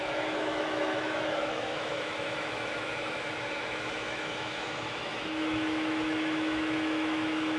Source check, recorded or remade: remade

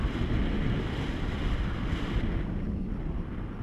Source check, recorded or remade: recorded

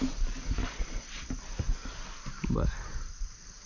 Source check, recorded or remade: recorded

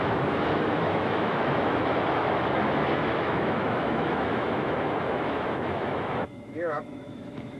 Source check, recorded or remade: remade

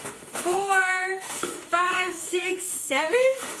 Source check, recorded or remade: remade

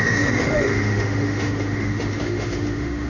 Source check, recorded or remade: remade